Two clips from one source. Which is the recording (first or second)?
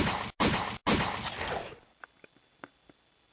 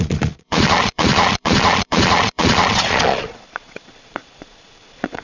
first